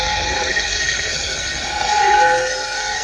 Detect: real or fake fake